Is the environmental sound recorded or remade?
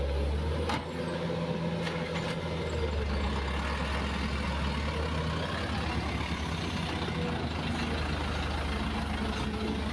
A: recorded